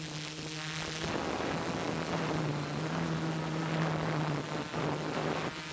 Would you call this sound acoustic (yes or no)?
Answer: yes